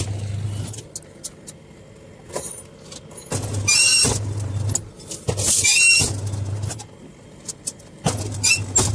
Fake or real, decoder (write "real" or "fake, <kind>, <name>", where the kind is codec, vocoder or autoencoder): real